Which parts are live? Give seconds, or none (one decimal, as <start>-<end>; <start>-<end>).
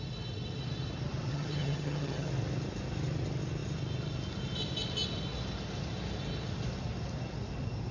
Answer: 0.0-1.3; 2.3-7.9